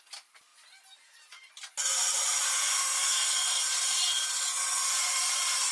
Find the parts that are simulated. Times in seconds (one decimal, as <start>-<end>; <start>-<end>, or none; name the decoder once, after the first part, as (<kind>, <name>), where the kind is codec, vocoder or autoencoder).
2.7-3.6 (codec, SNAC)

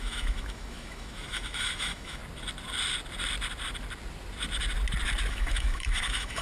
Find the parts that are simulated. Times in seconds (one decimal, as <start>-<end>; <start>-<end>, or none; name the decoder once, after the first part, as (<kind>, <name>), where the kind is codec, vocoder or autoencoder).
0.0-2.2 (autoencoder, DAC-VAE); 5.3-6.4

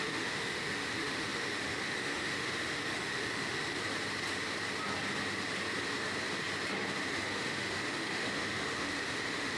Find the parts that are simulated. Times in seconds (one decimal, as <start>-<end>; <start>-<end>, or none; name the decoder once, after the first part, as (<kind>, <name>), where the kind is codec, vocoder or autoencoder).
0.0-3.8 (autoencoder, DAC-VAE); 7.1-9.6

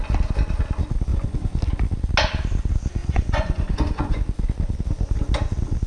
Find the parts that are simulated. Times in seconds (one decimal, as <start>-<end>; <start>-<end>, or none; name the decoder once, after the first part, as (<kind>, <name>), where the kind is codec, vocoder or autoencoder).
1.1-1.6 (vocoder, Vocos); 3.0-4.2

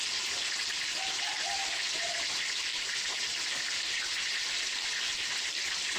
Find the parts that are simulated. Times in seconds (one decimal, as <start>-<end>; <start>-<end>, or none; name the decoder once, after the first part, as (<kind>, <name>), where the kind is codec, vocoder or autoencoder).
2.7-5.4 (vocoder, BigVGAN v2)

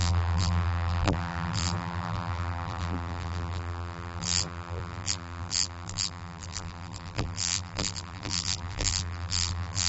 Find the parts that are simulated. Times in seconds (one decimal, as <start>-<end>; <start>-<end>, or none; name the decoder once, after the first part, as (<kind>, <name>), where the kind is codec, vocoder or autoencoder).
0.0-9.9 (vocoder, BigVGAN v2)